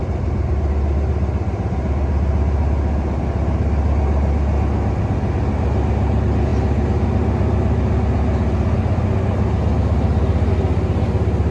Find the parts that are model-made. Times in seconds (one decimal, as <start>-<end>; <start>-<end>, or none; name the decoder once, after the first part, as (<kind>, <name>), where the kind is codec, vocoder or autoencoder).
none